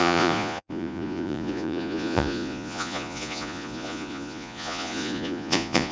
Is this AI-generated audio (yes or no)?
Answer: yes